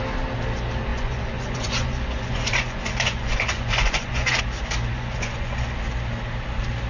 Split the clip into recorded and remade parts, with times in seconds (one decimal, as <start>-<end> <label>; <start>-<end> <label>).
0.0-0.9 recorded; 0.9-4.4 remade; 4.4-4.9 recorded; 4.9-5.8 remade; 5.8-6.9 recorded